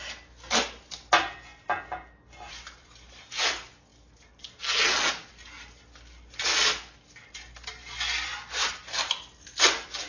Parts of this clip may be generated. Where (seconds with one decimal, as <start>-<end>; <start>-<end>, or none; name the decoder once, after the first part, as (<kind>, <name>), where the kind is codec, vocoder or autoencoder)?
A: none